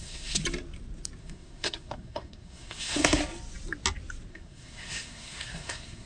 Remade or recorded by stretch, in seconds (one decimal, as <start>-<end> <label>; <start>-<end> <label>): 0.0-0.4 remade; 0.4-1.2 recorded; 1.2-3.2 remade; 3.2-4.3 recorded; 4.3-6.1 remade